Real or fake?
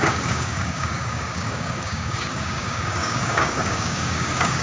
fake